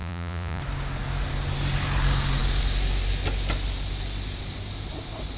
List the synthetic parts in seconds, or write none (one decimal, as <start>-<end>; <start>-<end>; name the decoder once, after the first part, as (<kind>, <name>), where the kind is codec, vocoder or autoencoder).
0.0-0.6 (vocoder, Vocos)